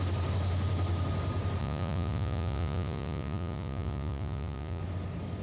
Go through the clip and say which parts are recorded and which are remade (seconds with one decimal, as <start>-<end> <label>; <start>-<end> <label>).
0.0-1.6 recorded; 1.6-4.8 remade; 4.8-5.4 recorded